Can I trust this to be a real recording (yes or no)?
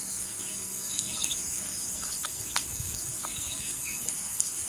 no